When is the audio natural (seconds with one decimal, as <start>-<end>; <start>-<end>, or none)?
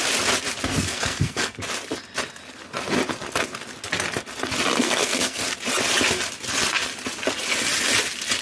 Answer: 0.0-0.7; 1.6-4.8; 5.4-8.4